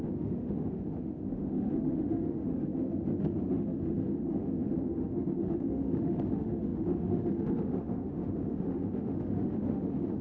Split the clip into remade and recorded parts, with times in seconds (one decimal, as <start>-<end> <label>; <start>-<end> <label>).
0.0-10.2 remade